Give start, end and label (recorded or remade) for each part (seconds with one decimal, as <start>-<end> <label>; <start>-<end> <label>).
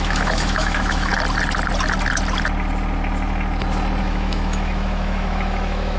0.0-1.1 remade; 1.1-4.0 recorded; 4.0-6.0 remade